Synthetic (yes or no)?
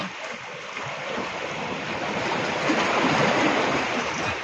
no